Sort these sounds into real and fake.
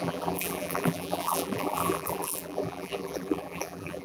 fake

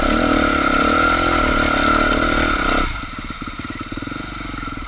real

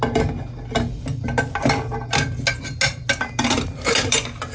real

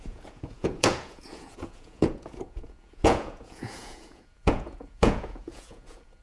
fake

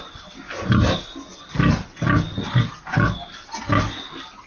real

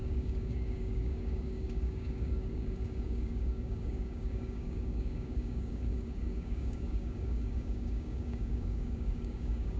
fake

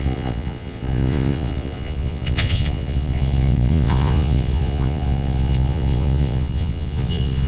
fake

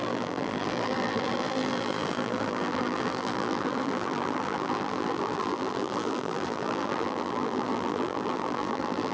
fake